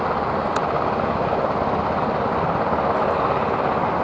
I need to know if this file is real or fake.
real